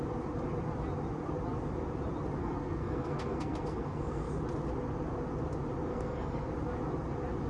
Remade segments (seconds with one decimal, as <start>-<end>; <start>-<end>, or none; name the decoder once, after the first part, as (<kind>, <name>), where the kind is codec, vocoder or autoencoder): 2.4-4.3 (codec, SNAC); 5.9-6.5

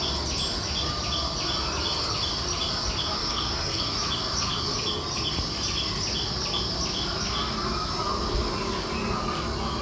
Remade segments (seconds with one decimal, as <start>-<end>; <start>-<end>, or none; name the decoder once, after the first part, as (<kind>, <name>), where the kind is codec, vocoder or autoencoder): 3.2-3.8 (codec, SNAC)

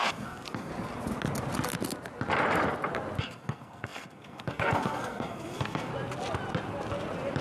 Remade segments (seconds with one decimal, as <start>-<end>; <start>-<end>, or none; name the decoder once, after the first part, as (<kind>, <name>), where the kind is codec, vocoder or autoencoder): 0.0-0.7 (codec, SNAC); 3.2-5.9

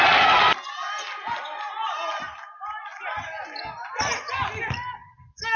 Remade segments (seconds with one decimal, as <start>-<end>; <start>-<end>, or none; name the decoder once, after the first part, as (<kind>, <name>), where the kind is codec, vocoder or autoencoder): none

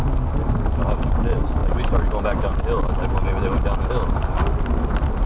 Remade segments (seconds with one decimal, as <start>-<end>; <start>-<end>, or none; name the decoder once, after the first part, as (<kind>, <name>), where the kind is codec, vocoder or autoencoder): none

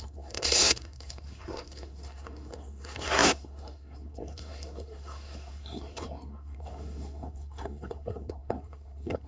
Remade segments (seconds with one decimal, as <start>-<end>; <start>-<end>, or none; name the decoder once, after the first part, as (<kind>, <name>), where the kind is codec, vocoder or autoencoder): 0.0-9.3 (codec, SNAC)

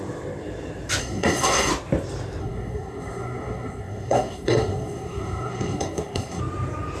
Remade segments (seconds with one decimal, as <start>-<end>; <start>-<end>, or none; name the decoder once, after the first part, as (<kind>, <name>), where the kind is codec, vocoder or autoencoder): 1.0-1.7 (codec, SNAC); 2.4-6.4